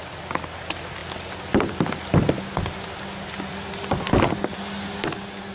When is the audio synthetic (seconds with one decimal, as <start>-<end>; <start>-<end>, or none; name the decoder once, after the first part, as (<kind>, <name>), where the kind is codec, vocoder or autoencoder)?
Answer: none